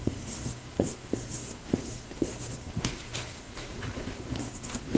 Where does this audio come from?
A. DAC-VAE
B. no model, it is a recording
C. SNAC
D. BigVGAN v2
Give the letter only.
C